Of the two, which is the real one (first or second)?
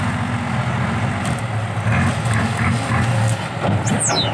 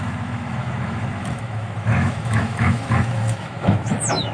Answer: first